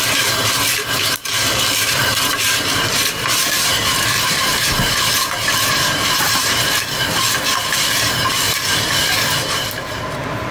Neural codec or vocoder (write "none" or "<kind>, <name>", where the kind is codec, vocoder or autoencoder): vocoder, BigVGAN v2